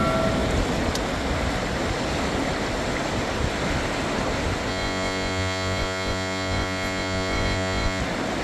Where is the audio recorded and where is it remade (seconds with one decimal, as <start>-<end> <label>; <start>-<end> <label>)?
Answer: 0.0-4.7 recorded; 4.7-8.0 remade; 8.0-8.4 recorded